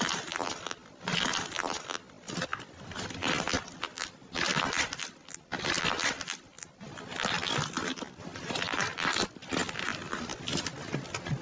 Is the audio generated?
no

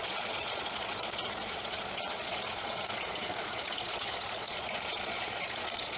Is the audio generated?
yes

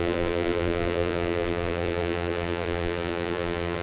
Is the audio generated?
yes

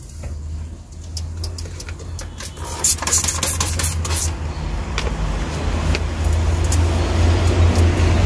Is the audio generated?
no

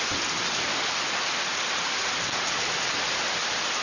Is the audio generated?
no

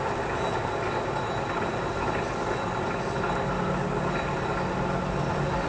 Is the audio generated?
no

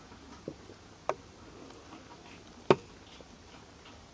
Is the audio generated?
no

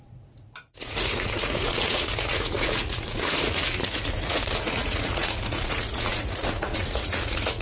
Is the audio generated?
yes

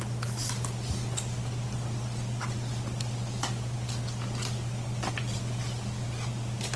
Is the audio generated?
no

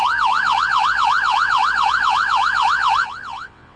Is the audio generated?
yes